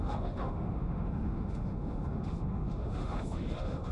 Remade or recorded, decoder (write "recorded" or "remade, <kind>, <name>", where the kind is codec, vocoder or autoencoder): remade, autoencoder, DAC-VAE